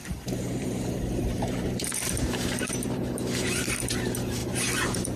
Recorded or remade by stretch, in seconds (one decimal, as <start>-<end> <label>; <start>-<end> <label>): 0.0-4.4 remade; 4.4-5.2 recorded